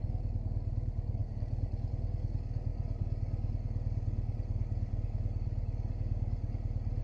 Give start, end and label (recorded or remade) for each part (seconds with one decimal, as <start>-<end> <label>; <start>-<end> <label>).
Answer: 0.0-7.0 remade